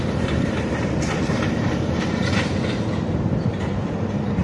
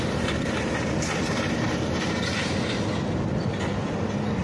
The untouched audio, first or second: second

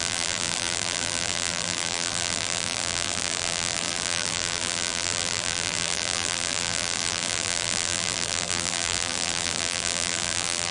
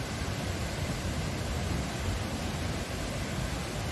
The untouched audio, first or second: second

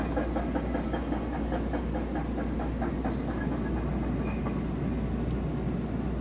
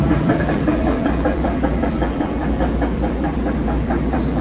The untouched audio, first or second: first